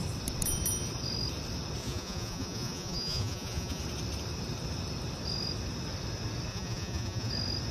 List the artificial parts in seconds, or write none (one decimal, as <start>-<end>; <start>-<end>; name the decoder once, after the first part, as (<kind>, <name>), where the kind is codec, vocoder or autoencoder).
1.8-3.8 (vocoder, Vocos); 6.5-7.3